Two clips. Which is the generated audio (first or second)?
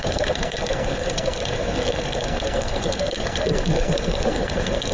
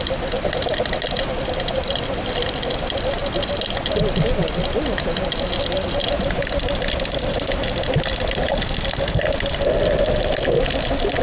first